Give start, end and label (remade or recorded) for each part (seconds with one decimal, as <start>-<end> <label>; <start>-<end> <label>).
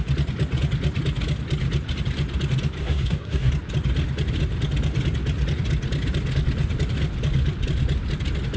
0.0-2.8 recorded; 2.8-3.5 remade; 3.5-8.6 recorded